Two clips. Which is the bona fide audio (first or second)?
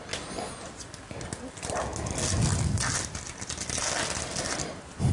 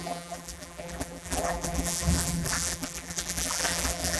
first